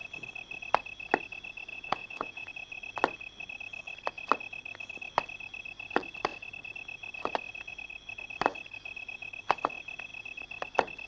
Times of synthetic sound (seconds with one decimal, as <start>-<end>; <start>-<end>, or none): 1.7-2.5